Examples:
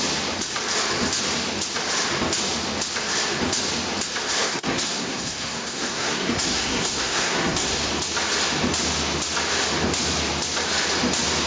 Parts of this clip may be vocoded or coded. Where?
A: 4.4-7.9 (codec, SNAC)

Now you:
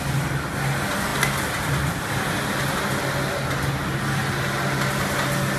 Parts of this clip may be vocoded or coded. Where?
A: none

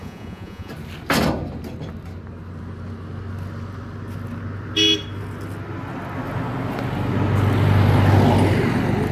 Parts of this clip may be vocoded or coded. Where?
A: 0.0-0.7 (vocoder, Vocos)

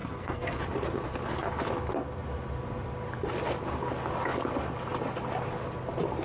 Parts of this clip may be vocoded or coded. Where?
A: 0.0-0.6 (codec, SNAC)

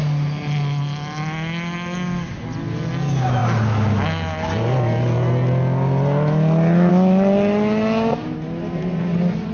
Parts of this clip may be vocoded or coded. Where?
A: none

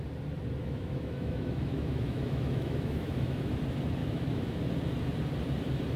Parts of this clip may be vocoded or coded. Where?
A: 0.6-3.5 (autoencoder, DAC-VAE); 4.0-4.6

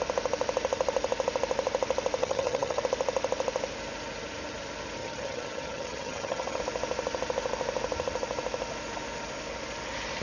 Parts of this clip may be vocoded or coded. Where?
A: 2.2-2.8 (vocoder, HiFi-GAN); 5.0-6.6